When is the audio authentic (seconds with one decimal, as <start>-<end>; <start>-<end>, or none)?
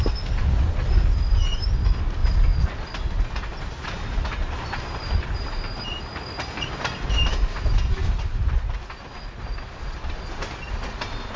0.0-11.4